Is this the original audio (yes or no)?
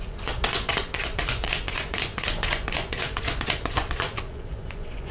no